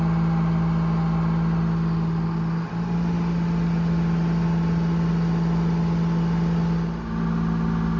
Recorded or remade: recorded